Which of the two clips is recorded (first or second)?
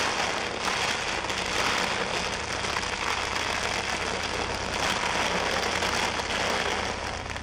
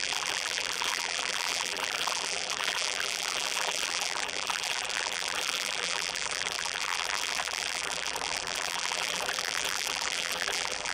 first